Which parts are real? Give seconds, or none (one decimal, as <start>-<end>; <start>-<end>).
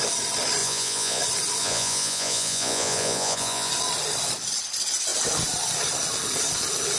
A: 0.0-0.6; 1.2-1.6; 3.7-7.0